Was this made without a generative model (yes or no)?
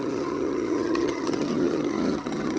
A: no